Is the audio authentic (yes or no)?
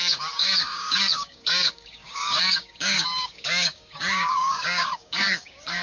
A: no